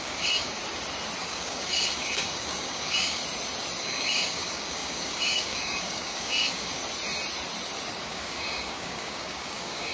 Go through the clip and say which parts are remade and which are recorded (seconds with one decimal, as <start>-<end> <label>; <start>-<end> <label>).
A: 0.0-0.6 remade; 0.6-1.2 recorded; 1.2-3.2 remade; 3.2-3.8 recorded; 3.8-6.8 remade; 6.8-7.9 recorded; 7.9-9.9 remade